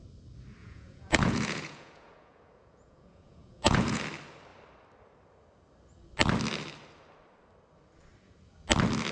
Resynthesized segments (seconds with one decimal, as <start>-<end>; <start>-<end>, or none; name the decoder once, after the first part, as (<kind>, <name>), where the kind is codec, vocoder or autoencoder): 0.6-4.0 (vocoder, Vocos)